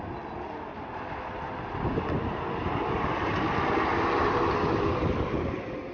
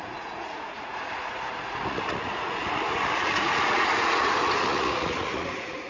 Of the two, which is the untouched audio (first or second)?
first